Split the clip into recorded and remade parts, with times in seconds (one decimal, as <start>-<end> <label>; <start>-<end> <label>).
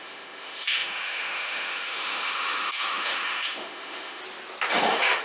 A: 0.0-4.2 remade; 4.2-4.7 recorded; 4.7-5.2 remade